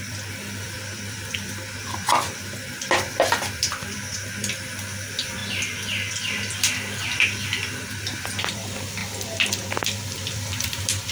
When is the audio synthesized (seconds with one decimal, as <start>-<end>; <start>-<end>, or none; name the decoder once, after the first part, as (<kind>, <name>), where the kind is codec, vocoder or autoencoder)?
0.0-5.4 (vocoder, BigVGAN v2); 6.1-9.0; 9.7-11.1